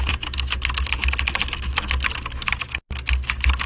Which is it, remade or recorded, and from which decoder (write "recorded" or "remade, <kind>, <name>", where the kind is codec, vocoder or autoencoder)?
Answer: recorded